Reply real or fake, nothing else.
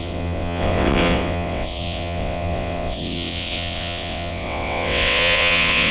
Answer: fake